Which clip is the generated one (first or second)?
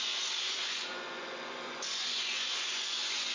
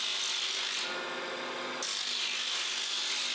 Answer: first